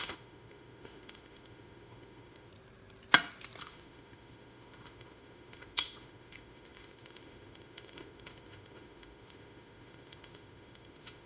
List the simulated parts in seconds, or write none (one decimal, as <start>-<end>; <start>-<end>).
0.0-2.5; 3.6-11.3